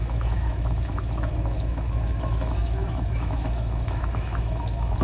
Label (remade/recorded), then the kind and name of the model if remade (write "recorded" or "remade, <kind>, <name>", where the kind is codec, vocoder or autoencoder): remade, autoencoder, DAC-VAE